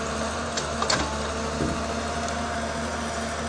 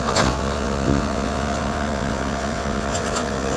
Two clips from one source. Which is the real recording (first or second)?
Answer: first